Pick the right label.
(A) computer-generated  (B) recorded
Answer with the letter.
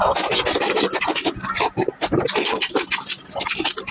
B